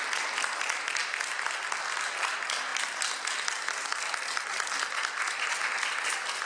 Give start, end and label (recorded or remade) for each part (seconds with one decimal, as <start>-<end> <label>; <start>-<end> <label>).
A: 0.0-6.5 recorded